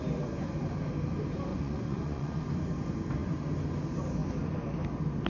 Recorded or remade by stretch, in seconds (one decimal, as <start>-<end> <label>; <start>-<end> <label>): 0.0-1.5 recorded; 1.5-2.4 remade; 2.4-5.3 recorded